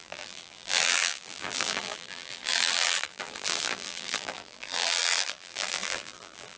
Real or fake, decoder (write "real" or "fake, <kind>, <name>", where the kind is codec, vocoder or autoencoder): fake, vocoder, BigVGAN v2